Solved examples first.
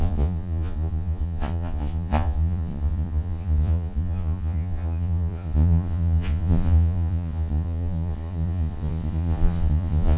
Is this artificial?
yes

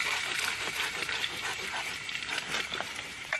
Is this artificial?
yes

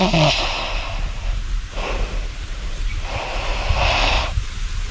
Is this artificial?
no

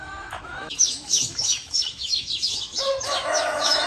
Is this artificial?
yes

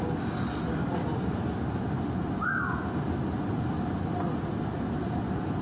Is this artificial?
no